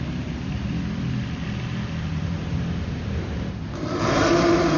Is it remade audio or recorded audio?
remade